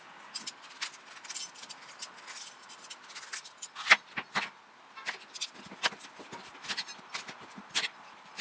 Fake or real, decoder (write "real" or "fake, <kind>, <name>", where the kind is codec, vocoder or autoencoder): real